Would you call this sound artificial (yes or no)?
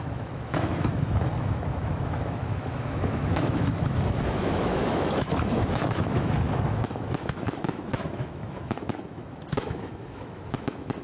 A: yes